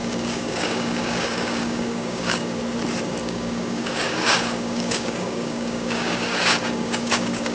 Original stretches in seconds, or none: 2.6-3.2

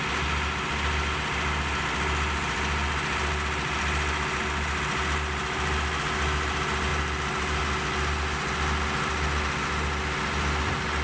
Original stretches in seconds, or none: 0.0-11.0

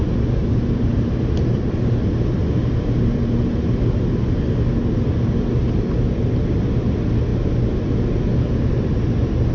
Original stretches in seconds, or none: 0.0-9.5